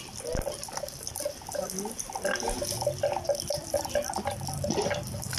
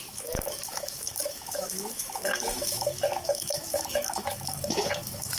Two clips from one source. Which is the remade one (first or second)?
second